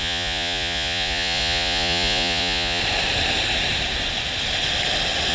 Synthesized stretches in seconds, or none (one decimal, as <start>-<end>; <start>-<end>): 0.0-2.8

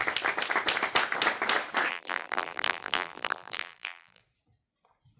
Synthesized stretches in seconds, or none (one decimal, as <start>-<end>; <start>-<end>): 1.9-4.2

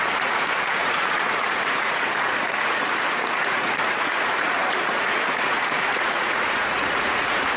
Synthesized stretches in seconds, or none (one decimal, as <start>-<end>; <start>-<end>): 0.0-7.6